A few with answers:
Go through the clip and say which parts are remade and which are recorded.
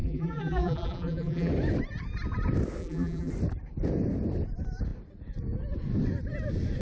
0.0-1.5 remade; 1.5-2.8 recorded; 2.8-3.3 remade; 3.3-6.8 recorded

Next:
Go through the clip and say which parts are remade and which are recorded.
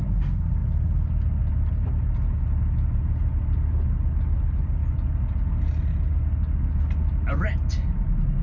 0.0-8.4 recorded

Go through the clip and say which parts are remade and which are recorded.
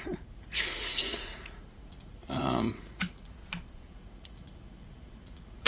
0.0-3.4 remade; 3.4-3.9 recorded; 3.9-5.7 remade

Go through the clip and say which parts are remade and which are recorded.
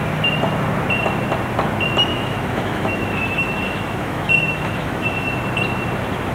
0.0-2.1 recorded; 2.1-5.3 remade; 5.3-6.3 recorded